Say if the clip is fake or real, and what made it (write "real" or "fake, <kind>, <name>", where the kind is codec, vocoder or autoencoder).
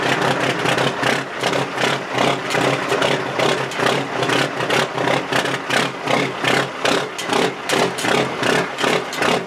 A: real